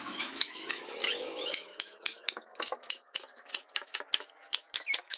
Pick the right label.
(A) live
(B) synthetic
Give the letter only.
B